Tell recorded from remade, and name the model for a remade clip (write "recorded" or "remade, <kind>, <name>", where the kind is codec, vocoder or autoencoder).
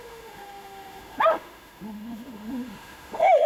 remade, autoencoder, DAC-VAE